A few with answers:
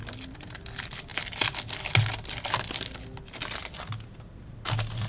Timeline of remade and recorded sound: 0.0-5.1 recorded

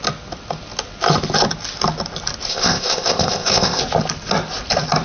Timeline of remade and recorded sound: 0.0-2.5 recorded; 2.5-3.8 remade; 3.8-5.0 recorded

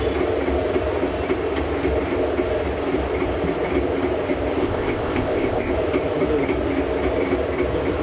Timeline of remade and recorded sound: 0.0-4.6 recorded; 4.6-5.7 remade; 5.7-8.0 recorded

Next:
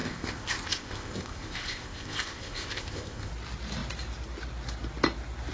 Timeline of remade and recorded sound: 0.0-3.3 remade; 3.3-5.5 recorded